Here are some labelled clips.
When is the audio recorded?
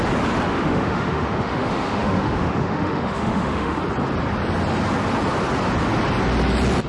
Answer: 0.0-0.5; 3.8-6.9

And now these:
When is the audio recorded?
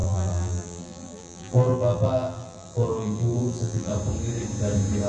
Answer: 3.9-5.1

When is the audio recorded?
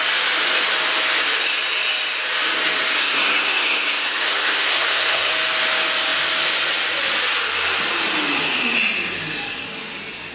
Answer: 0.0-3.0; 5.3-10.3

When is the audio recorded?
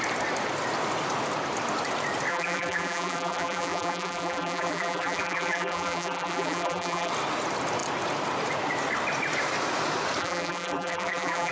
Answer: 0.0-2.3; 7.1-10.2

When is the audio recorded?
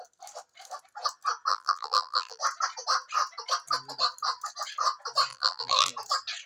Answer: 0.0-1.5; 2.4-5.3; 5.9-6.5